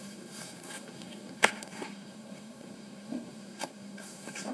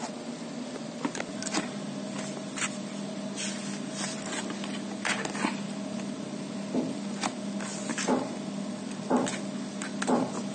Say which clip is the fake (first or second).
first